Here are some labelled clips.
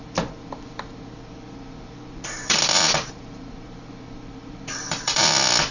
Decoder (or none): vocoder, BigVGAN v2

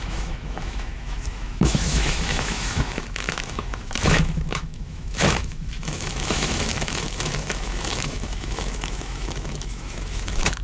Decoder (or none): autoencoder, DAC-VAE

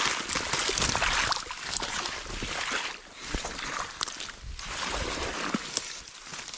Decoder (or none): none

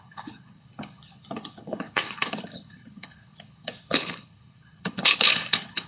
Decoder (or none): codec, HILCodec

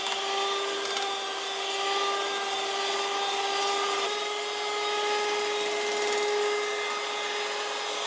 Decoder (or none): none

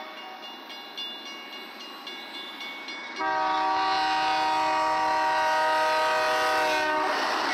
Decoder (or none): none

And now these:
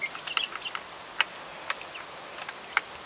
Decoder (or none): none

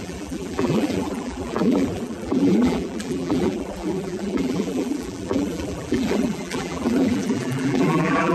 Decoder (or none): vocoder, BigVGAN v2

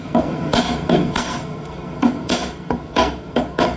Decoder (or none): codec, SNAC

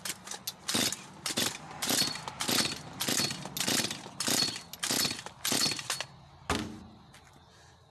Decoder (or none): none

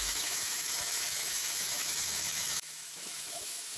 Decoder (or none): autoencoder, DAC-VAE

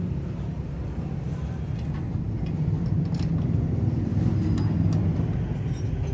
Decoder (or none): none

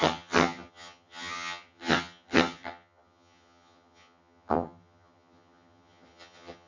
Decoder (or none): vocoder, HiFi-GAN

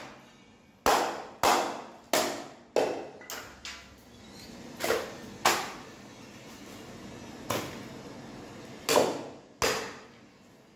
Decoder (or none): none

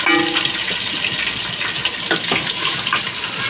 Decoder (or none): none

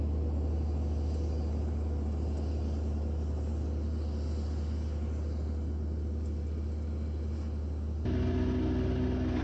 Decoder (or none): none